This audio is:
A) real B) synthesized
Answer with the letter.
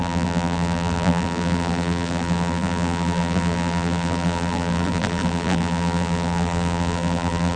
B